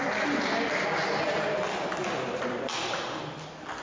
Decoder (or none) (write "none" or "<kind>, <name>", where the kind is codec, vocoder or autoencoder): none